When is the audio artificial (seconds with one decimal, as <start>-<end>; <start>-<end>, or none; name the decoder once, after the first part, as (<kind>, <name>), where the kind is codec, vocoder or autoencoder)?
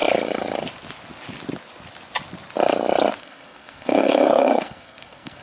3.2-5.4 (codec, SNAC)